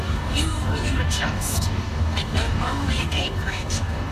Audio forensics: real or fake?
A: fake